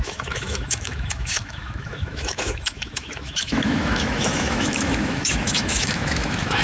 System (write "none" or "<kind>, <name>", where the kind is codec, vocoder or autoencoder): autoencoder, DAC-VAE